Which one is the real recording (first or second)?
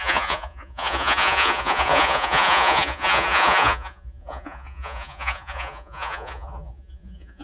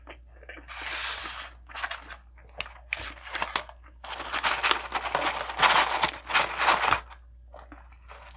second